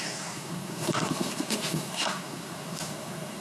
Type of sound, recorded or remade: remade